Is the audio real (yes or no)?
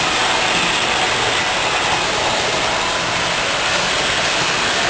yes